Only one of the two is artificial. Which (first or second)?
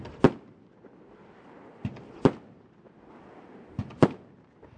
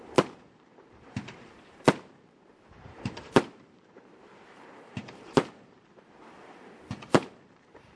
second